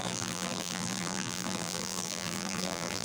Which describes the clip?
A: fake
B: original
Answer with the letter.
A